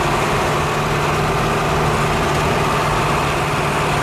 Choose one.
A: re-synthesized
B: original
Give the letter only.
B